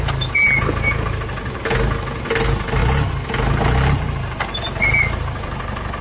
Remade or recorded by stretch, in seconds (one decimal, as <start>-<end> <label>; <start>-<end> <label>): 0.0-6.0 recorded